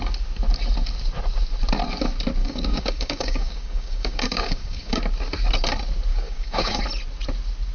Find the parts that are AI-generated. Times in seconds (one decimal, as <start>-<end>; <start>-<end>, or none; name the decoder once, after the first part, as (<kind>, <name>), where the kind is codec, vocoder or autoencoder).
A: 2.4-5.0 (codec, DAC); 6.1-6.8